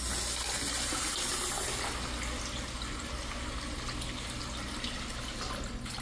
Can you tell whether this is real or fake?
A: real